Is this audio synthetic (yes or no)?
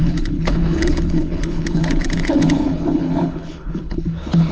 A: yes